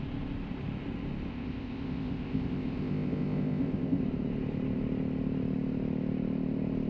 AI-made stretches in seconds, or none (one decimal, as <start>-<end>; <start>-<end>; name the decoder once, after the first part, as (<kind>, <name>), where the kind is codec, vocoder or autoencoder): 1.3-4.0 (codec, ZipCodec)